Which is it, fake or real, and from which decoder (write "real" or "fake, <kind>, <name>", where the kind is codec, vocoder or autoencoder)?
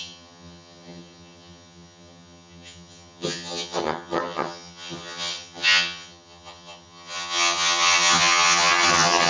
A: fake, vocoder, HiFi-GAN